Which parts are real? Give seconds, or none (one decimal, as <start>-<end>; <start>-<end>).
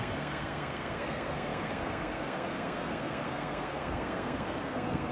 none